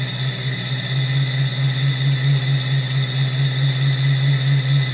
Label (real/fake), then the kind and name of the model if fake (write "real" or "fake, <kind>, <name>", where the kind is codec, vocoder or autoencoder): real